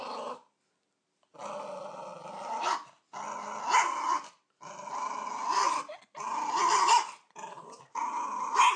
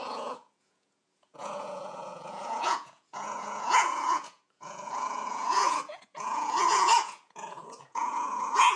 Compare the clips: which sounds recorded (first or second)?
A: first